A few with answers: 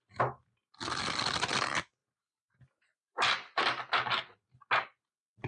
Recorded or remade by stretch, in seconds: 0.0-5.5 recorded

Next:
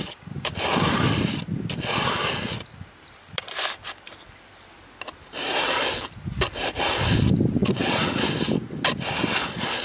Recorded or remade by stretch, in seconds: 0.0-7.6 recorded; 7.6-8.1 remade; 8.1-9.8 recorded